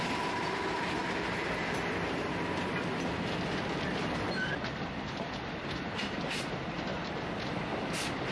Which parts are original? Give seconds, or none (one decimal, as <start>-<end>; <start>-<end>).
0.0-8.3